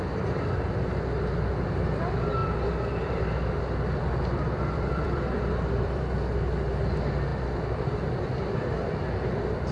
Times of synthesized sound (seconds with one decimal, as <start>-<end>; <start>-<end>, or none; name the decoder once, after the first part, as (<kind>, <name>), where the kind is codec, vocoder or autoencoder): 2.4-6.1 (vocoder, BigVGAN v2); 7.3-8.9